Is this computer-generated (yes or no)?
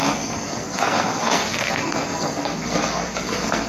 yes